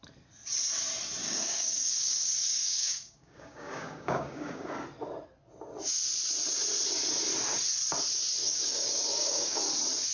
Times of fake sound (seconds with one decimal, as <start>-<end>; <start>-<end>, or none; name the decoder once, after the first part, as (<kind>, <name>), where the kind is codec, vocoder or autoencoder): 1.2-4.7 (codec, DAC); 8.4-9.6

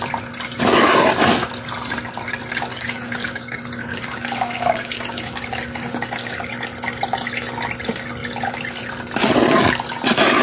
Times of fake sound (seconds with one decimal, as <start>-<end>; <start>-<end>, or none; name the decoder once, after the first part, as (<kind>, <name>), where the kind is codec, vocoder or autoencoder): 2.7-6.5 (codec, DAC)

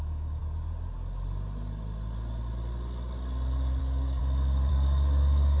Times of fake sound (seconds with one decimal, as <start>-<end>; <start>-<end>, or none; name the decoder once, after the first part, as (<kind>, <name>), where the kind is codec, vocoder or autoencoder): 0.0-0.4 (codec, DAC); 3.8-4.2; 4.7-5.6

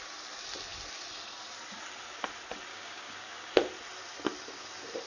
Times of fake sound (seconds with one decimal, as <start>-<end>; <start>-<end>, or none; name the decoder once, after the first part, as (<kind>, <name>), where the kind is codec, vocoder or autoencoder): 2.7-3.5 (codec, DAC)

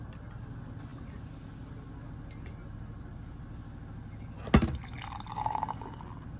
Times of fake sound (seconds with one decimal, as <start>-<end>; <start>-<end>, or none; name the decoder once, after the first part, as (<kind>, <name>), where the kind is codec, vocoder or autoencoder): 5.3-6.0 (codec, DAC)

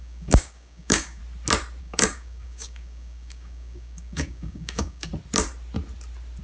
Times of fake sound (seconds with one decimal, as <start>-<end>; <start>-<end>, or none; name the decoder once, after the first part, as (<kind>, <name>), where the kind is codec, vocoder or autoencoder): 0.0-1.2 (codec, DAC); 1.8-5.1